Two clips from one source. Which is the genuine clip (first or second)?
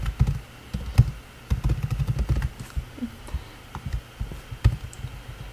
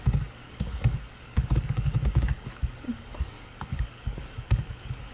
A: first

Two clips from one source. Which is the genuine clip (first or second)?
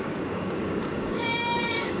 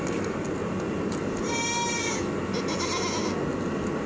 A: second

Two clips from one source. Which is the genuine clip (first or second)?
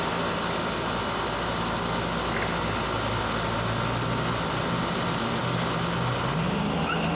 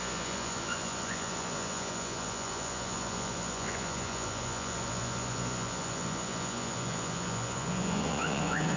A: first